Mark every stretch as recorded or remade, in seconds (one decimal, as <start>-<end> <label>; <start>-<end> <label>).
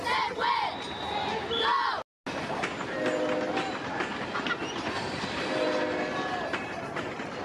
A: 0.0-7.4 recorded